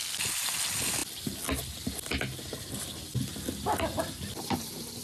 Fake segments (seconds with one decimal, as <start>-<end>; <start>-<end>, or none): none